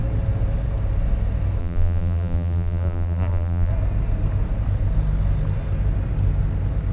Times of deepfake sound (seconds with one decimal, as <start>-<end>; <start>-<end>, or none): 1.6-3.7